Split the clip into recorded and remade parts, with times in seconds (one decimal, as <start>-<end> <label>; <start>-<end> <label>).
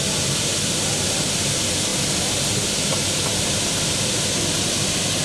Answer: 0.0-5.2 recorded